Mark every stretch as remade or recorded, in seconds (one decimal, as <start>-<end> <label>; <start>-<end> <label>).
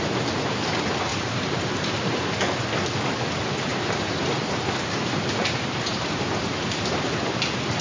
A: 0.0-1.1 recorded; 1.1-2.3 remade; 2.3-3.7 recorded; 3.7-7.8 remade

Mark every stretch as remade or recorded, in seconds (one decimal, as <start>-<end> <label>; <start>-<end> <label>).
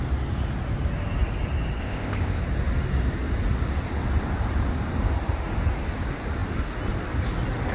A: 0.0-1.8 recorded; 1.8-2.4 remade; 2.4-7.7 recorded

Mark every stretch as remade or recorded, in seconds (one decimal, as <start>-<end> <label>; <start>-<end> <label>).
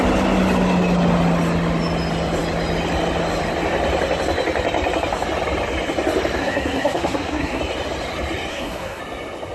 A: 0.0-6.4 recorded; 6.4-7.6 remade; 7.6-8.5 recorded; 8.5-9.0 remade; 9.0-9.5 recorded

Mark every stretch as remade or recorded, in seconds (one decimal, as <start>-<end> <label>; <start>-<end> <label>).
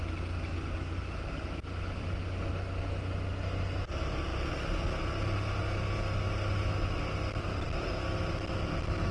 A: 0.0-9.1 recorded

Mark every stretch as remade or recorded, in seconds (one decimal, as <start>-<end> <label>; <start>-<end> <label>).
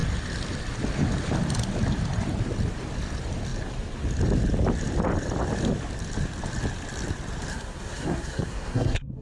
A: 0.0-7.5 recorded; 7.5-9.2 remade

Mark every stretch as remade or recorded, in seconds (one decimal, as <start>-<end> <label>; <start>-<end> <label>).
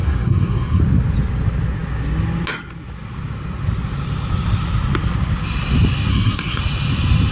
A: 0.0-0.8 remade; 0.8-6.1 recorded; 6.1-6.6 remade; 6.6-7.3 recorded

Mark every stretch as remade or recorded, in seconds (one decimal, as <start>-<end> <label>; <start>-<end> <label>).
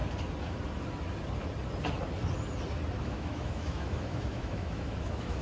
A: 0.0-3.0 recorded; 3.0-5.4 remade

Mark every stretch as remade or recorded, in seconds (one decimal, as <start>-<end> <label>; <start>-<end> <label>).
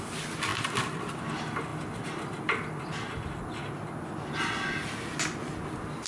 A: 0.0-6.1 recorded